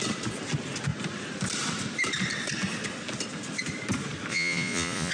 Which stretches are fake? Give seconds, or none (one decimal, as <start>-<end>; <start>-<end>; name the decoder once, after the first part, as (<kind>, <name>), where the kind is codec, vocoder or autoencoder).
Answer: 4.3-5.1 (vocoder, Vocos)